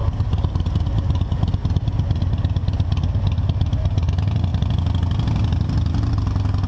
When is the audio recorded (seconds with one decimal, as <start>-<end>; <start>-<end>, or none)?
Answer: 0.0-6.7